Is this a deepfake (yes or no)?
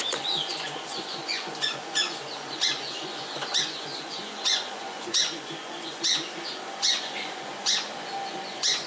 yes